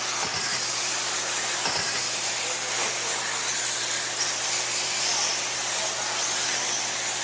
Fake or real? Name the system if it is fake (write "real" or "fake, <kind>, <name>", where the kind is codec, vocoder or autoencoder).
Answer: real